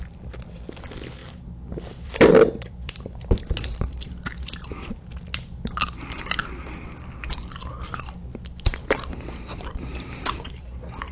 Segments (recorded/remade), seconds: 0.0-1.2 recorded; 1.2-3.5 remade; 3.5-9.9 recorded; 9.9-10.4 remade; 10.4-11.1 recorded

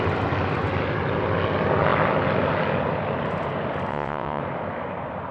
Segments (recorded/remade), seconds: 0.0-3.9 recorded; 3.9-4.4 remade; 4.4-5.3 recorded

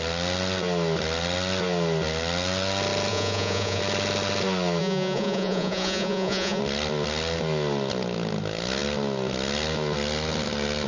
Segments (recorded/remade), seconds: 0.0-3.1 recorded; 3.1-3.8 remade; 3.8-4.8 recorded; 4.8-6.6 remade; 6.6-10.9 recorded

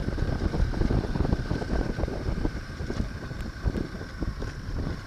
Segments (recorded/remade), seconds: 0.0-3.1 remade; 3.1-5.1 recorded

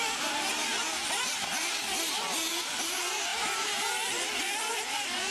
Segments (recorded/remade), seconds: 0.0-0.5 remade; 0.5-2.5 recorded; 2.5-5.3 remade